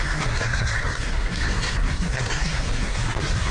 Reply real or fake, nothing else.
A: fake